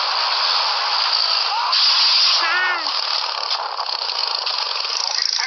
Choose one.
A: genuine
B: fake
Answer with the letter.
A